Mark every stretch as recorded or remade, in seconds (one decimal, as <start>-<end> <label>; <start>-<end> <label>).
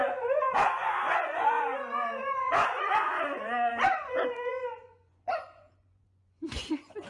0.0-7.1 remade